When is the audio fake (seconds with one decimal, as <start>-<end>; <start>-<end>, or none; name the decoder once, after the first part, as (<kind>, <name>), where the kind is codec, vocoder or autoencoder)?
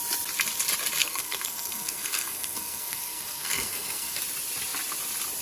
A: 1.0-4.2 (codec, SNAC)